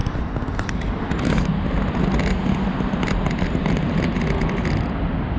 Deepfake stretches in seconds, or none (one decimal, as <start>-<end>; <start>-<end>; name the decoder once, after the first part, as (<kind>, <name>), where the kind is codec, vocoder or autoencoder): none